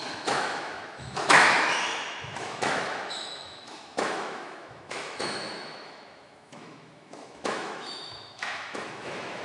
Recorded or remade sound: remade